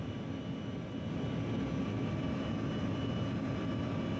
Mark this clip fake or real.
real